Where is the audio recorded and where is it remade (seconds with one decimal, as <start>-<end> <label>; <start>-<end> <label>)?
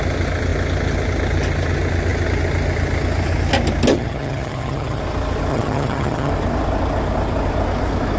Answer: 0.0-3.9 recorded; 3.9-5.0 remade; 5.0-5.5 recorded; 5.5-6.3 remade; 6.3-8.2 recorded